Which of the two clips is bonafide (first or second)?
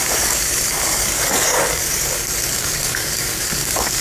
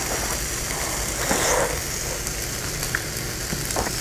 second